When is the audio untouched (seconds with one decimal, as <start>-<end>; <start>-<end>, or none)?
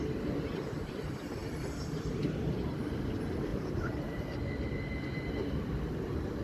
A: 0.0-3.5; 4.4-6.4